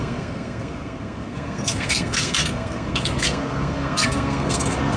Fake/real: fake